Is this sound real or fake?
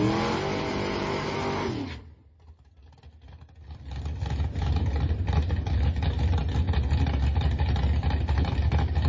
real